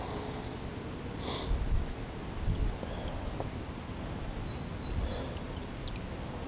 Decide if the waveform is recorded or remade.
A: recorded